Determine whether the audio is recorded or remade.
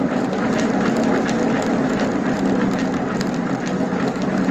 recorded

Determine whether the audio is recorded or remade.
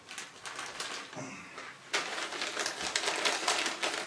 recorded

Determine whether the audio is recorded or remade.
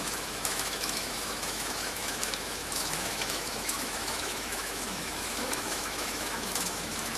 remade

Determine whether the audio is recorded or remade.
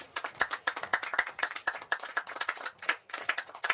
remade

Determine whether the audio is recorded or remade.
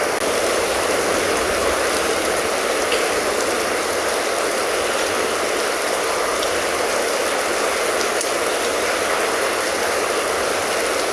recorded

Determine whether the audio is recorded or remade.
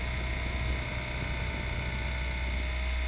recorded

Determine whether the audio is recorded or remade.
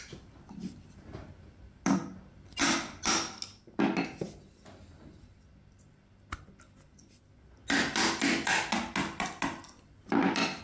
recorded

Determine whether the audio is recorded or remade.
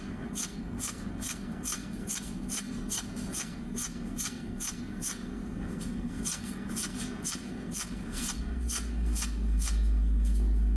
remade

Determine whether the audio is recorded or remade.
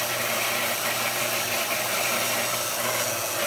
recorded